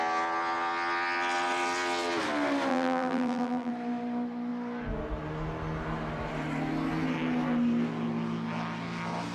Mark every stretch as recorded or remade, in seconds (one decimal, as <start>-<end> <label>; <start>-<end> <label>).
0.0-2.7 recorded; 2.7-3.7 remade; 3.7-9.3 recorded